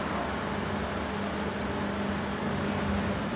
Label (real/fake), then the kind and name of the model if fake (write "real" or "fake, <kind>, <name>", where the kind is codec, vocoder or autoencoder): real